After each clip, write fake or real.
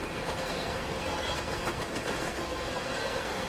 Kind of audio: fake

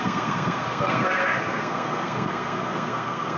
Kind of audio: fake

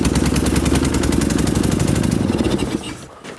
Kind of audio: real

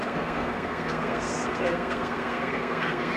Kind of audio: fake